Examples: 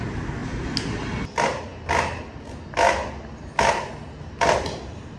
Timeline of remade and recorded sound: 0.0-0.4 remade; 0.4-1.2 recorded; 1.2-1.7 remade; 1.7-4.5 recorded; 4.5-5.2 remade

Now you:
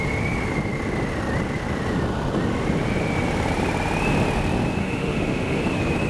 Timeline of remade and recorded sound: 0.0-4.8 recorded; 4.8-5.6 remade; 5.6-6.1 recorded

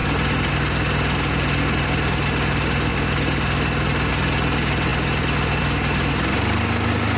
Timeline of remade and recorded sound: 0.0-7.2 recorded